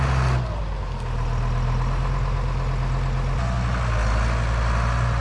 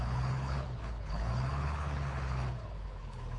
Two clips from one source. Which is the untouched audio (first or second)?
first